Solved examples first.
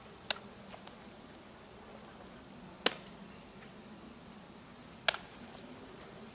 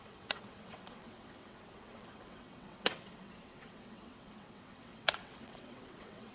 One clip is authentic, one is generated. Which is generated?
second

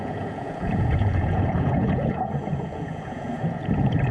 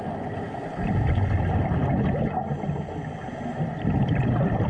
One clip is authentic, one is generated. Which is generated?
first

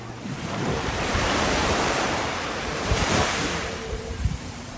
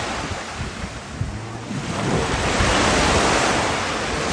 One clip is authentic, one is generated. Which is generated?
first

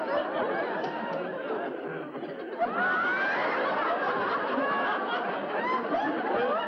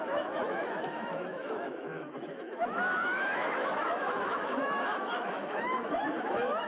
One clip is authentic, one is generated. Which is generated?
second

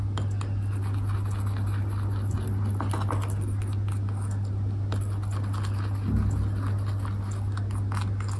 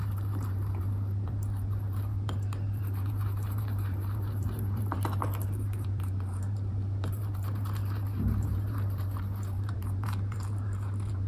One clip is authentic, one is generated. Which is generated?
second